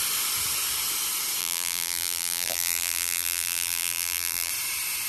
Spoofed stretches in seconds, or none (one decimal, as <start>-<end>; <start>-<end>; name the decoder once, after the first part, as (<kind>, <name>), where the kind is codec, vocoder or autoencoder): 1.4-4.5 (vocoder, BigVGAN v2)